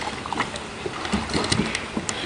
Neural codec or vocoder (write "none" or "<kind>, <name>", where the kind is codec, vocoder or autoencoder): none